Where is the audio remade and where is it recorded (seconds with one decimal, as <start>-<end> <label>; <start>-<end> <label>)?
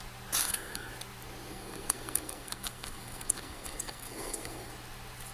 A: 0.0-0.4 recorded; 0.4-0.9 remade; 0.9-1.5 recorded; 1.5-4.7 remade; 4.7-5.3 recorded